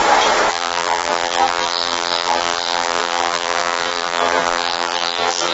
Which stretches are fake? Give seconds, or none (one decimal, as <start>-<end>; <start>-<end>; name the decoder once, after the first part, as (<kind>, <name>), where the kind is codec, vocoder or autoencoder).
0.5-5.5 (vocoder, BigVGAN v2)